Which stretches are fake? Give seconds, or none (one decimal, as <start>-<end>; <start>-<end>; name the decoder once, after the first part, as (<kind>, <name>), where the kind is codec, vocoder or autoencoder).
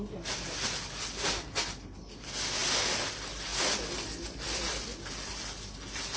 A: none